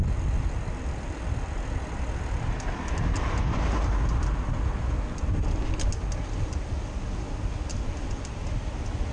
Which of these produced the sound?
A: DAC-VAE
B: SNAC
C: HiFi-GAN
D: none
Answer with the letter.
D